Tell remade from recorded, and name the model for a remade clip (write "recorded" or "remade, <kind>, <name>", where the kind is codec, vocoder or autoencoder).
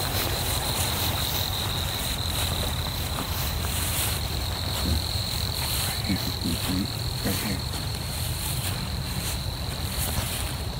remade, vocoder, BigVGAN v2